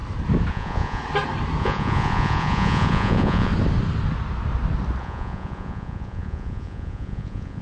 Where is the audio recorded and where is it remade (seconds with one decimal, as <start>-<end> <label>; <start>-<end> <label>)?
0.0-0.5 recorded; 0.5-1.0 remade; 1.0-1.6 recorded; 1.6-3.5 remade; 3.5-5.0 recorded; 5.0-7.6 remade